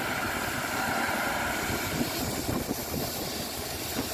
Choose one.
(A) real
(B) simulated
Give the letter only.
A